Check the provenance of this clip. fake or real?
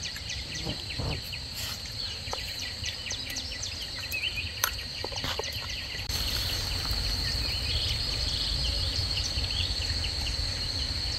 fake